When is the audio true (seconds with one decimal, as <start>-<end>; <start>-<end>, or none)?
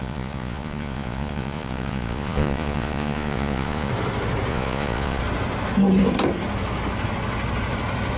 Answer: 3.9-4.5; 5.2-8.2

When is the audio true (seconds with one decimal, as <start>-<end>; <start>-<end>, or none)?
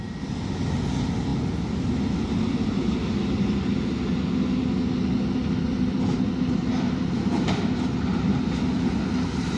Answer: 0.0-6.7; 7.8-9.6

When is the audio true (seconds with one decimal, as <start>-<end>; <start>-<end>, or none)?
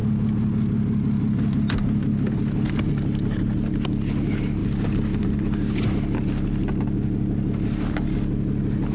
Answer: 0.0-4.6; 5.2-8.9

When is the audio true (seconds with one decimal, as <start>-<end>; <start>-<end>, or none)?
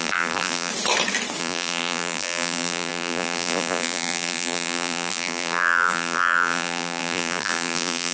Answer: 0.7-1.4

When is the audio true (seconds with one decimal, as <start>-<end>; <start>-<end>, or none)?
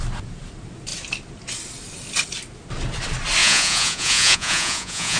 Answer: 0.0-3.4